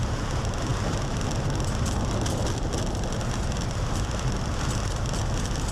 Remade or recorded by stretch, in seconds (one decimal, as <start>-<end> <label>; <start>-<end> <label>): 0.0-5.7 recorded